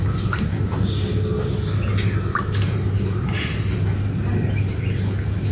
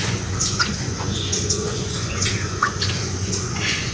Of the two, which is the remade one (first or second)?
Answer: second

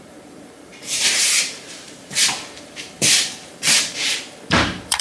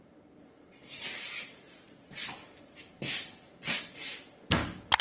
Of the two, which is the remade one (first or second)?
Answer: first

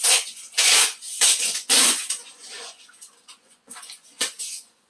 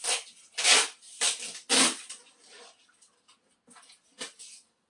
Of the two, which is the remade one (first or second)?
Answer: first